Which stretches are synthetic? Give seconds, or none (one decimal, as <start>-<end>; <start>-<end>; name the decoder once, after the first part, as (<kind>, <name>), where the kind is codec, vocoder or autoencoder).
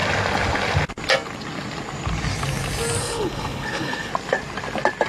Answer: 3.0-4.1 (codec, HILCodec)